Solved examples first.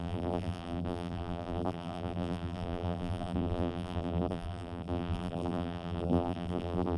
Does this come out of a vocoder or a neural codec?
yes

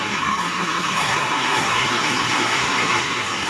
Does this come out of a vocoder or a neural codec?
yes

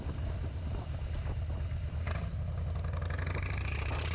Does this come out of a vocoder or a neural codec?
no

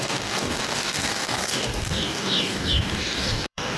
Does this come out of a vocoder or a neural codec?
yes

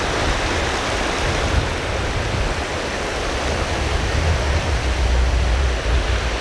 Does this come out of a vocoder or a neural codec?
no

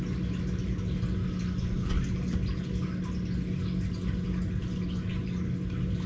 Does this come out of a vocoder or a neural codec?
no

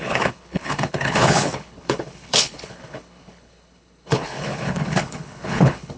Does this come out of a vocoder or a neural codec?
yes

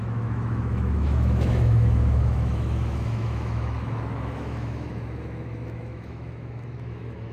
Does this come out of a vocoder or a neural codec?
yes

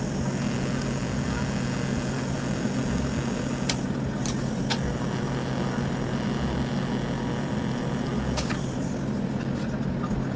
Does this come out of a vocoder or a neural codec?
no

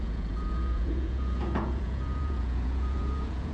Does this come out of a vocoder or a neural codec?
yes